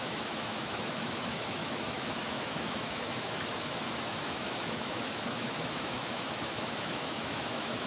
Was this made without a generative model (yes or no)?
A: no